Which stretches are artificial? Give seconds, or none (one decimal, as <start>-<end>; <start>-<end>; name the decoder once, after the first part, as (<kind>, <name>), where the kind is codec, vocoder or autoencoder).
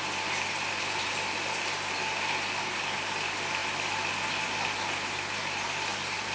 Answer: none